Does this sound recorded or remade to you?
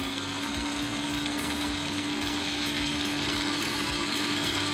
remade